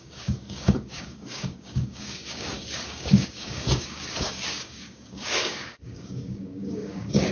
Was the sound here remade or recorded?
remade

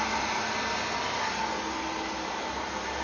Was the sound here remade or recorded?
recorded